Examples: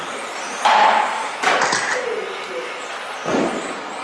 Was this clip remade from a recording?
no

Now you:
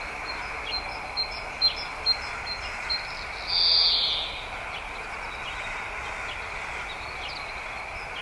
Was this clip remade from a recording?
no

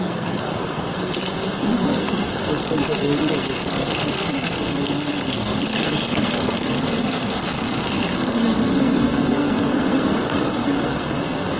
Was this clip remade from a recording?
yes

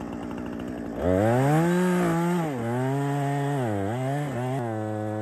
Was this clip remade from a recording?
no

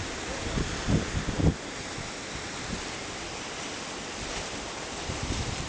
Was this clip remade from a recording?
no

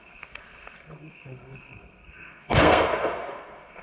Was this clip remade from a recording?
yes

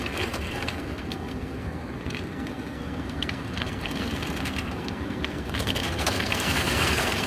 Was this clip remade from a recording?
yes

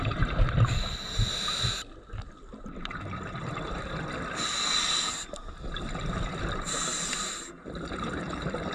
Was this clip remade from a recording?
no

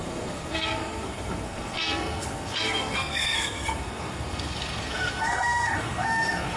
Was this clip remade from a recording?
yes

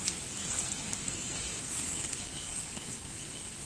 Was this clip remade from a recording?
yes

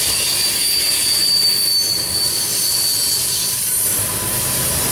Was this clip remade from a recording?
no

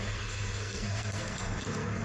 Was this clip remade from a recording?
yes